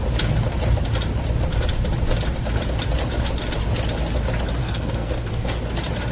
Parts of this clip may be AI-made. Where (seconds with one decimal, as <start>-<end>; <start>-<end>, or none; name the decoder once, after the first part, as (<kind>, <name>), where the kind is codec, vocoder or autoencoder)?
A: 4.6-5.6 (codec, SNAC)